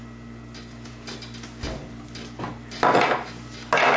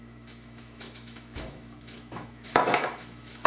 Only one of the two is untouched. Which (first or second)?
first